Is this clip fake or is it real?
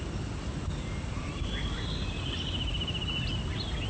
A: real